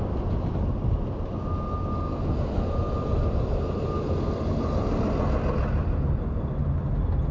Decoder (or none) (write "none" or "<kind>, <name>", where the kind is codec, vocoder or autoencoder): none